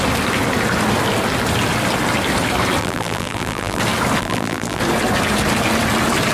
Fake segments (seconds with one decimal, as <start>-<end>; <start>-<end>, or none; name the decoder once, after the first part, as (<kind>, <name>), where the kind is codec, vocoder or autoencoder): 2.8-3.8 (vocoder, BigVGAN v2); 4.2-4.8